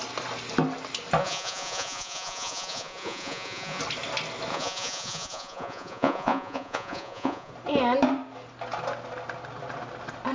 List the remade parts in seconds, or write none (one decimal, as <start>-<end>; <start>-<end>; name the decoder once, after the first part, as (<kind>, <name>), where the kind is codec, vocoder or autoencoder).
1.2-3.8 (vocoder, Vocos); 4.5-7.5